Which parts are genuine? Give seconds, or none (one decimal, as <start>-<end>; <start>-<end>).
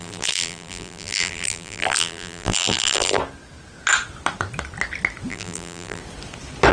3.2-5.3; 6.0-6.7